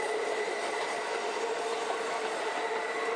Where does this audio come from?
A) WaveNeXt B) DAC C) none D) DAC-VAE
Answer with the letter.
C